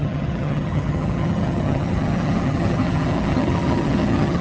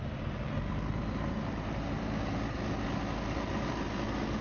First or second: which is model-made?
first